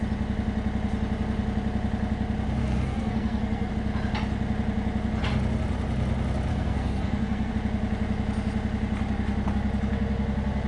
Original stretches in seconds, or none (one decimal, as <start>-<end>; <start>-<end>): 0.0-2.6; 3.7-6.5; 7.5-10.7